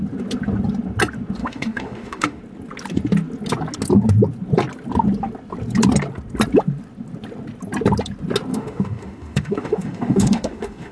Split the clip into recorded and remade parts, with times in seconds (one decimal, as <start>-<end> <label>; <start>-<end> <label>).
0.0-1.4 recorded; 1.4-2.4 remade; 2.4-8.5 recorded; 8.5-10.9 remade